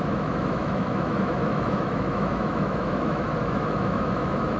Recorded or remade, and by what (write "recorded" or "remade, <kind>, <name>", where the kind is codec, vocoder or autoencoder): remade, autoencoder, DAC-VAE